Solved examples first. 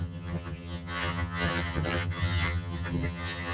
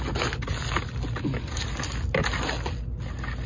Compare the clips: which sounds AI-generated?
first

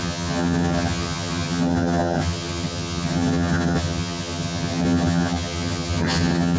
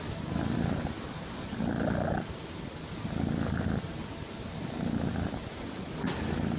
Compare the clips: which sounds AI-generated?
first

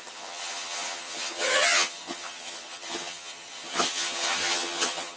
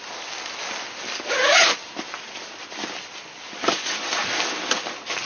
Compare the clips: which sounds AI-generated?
first